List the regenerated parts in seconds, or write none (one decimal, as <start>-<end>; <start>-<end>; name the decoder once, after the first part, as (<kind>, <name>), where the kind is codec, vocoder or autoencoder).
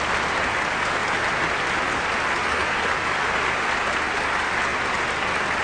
2.4-3.3 (codec, DAC)